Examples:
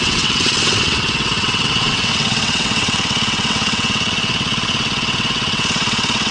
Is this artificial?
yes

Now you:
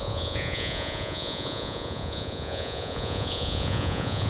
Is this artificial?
yes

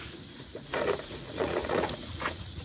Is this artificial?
yes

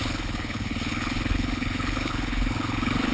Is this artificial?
yes